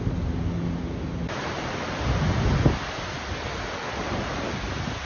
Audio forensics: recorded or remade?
recorded